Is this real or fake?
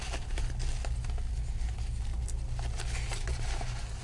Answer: real